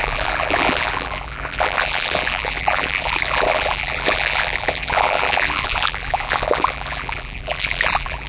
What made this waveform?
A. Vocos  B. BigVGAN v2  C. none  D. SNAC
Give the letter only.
B